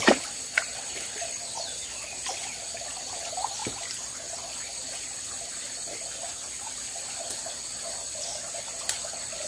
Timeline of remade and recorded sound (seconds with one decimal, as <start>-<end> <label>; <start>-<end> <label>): 0.0-9.5 recorded